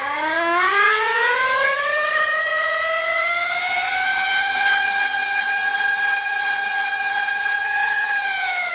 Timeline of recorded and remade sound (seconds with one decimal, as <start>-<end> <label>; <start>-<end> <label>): 0.0-8.7 remade